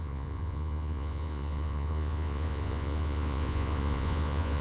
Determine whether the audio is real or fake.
fake